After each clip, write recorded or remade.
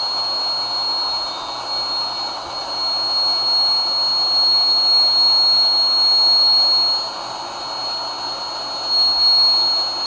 recorded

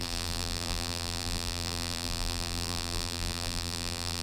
remade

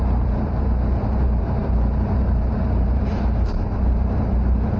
remade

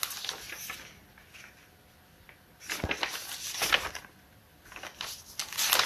recorded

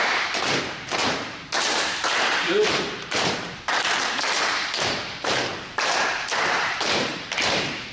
remade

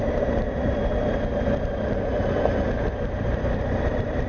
remade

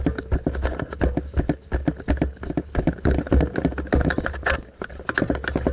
recorded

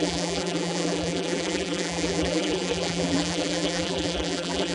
remade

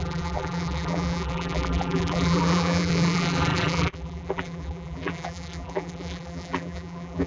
remade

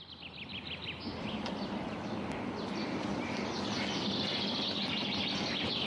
remade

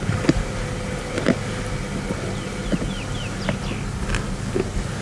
recorded